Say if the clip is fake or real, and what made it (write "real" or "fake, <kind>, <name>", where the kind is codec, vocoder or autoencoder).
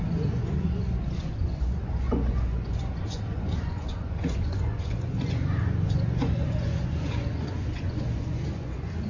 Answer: fake, vocoder, Vocos